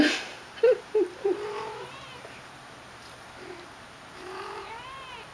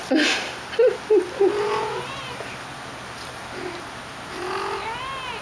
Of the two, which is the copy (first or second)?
first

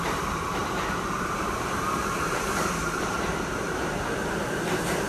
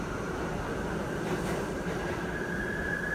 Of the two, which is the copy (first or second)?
first